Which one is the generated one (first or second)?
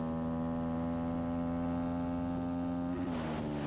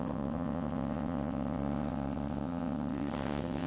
second